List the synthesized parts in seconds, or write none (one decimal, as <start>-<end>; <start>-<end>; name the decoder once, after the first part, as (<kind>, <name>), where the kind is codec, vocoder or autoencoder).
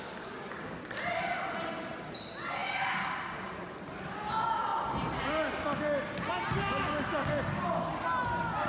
none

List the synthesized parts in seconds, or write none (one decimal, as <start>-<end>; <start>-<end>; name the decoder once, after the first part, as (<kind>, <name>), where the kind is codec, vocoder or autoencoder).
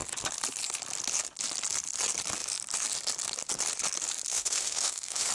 4.3-5.3 (autoencoder, DAC-VAE)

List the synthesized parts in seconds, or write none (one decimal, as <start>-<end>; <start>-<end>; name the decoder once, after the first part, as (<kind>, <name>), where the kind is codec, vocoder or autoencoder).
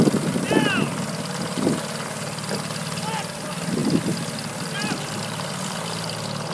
none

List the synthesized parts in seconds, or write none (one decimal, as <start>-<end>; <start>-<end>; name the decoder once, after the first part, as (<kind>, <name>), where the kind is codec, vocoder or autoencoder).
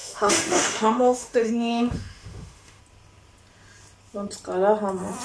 0.0-2.8 (autoencoder, DAC-VAE)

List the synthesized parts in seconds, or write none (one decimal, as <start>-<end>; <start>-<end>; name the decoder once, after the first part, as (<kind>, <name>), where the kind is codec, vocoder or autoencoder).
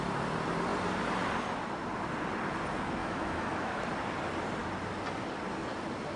3.0-3.8 (autoencoder, DAC-VAE)